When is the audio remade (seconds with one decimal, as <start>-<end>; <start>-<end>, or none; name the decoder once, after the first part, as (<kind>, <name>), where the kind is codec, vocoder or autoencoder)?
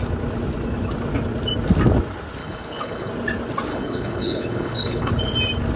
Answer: 2.4-3.1 (codec, HILCodec); 3.7-5.1